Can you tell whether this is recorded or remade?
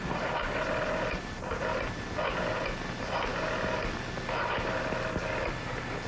recorded